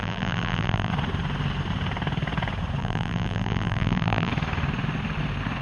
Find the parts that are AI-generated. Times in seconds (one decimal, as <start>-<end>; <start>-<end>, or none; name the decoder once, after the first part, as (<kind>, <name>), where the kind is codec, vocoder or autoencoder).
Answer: 0.0-0.9 (vocoder, BigVGAN v2); 2.8-4.3